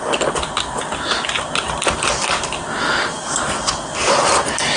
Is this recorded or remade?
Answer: recorded